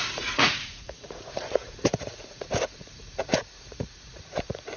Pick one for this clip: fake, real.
fake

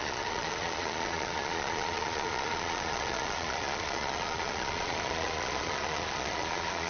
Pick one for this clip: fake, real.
fake